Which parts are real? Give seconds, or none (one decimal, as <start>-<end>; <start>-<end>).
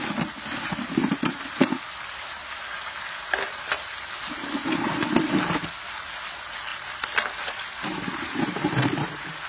0.0-9.5